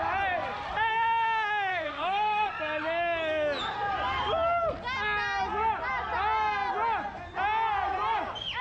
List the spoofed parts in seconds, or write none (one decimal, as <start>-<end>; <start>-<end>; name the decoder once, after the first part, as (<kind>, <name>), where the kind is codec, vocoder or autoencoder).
1.7-2.5 (codec, SNAC)